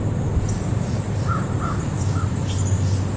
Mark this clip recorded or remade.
recorded